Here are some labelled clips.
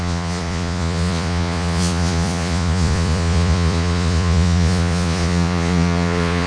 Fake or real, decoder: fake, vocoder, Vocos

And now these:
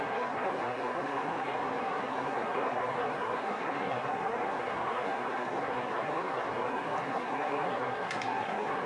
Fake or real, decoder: fake, codec, SNAC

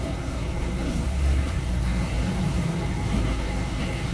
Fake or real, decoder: fake, codec, SNAC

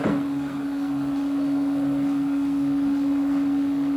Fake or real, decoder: fake, codec, SNAC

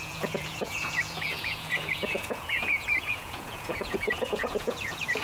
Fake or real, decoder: fake, vocoder, Vocos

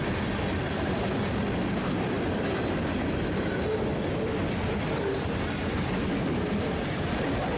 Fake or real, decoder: real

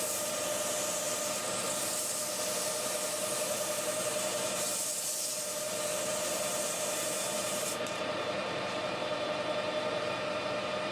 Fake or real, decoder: fake, vocoder, BigVGAN v2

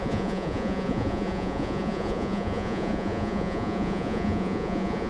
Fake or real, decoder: fake, vocoder, Vocos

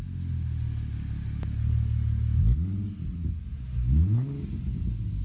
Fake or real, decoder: real